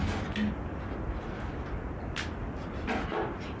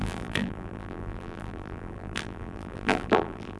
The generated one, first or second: second